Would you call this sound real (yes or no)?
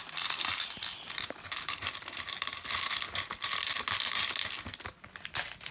yes